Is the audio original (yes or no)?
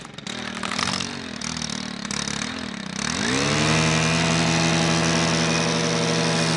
yes